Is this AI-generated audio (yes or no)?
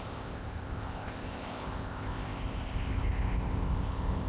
yes